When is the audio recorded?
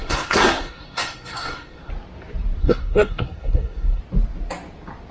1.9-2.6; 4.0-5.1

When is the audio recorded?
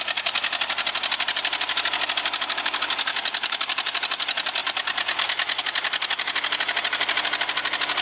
0.0-8.0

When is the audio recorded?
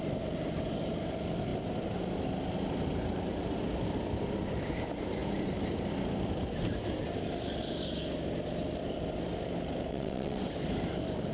0.0-9.9; 10.4-11.3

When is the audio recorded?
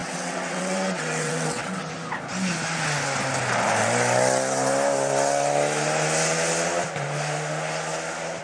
1.9-8.4